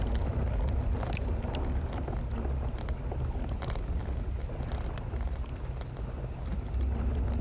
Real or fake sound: real